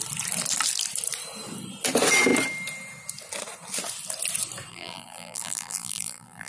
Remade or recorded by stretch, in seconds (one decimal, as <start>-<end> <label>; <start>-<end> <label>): 0.0-4.7 recorded; 4.7-6.5 remade